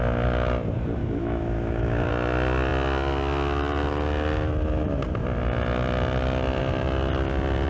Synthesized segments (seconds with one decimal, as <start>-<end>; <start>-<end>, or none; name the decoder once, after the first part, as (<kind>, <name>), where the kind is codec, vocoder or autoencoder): 1.0-2.1 (autoencoder, DAC-VAE)